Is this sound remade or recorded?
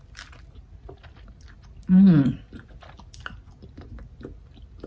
recorded